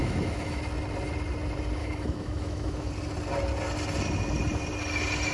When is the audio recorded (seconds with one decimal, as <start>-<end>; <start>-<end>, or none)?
0.6-1.8; 2.9-5.3